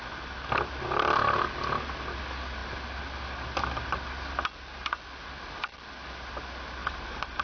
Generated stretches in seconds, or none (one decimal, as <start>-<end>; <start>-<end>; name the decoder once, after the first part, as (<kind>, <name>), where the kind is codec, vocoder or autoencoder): 6.8-7.4 (vocoder, BigVGAN v2)